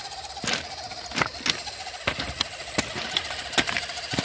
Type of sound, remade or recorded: recorded